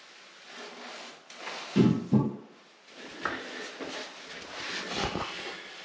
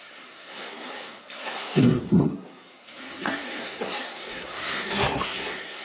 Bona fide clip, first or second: first